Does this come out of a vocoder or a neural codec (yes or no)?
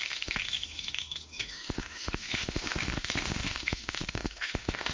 yes